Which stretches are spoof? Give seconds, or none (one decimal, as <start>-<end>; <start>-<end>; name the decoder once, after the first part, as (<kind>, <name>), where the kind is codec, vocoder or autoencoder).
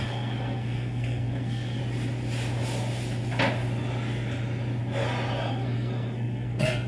0.0-1.8 (codec, SNAC); 5.5-6.9